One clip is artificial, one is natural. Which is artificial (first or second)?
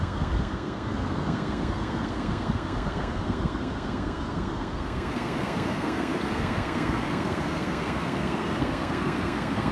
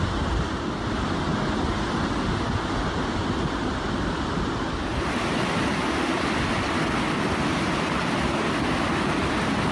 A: first